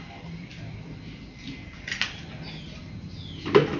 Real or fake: fake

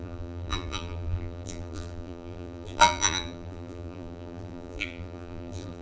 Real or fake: fake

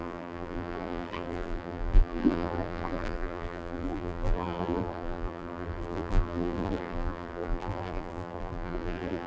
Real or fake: fake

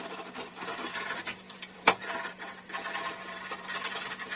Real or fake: fake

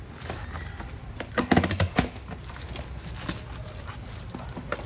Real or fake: real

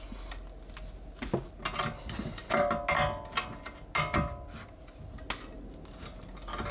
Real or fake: real